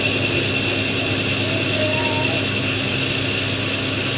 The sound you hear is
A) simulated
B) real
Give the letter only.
B